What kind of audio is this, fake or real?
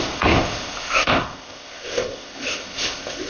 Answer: fake